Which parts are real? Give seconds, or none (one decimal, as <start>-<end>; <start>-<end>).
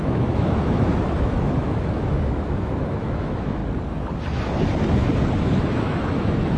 3.6-5.4